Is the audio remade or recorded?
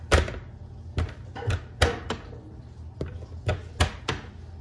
recorded